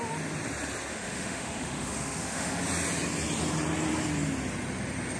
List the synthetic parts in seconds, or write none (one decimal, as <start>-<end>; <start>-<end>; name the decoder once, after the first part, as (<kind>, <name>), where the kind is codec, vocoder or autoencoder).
0.9-2.6 (autoencoder, DAC-VAE)